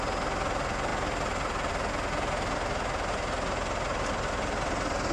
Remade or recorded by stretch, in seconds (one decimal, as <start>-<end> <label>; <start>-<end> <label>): 0.0-5.1 recorded